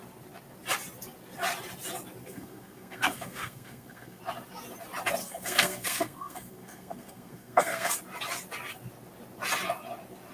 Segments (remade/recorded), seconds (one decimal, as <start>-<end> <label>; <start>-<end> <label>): 0.0-2.2 recorded; 2.2-4.2 remade; 4.2-5.2 recorded; 5.2-7.9 remade; 7.9-10.3 recorded